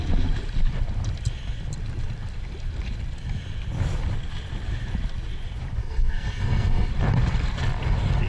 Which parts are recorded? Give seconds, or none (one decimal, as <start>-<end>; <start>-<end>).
0.0-5.8; 6.9-8.3